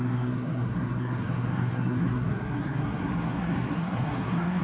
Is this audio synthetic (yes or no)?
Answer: yes